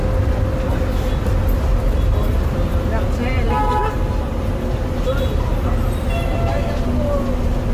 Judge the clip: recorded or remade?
recorded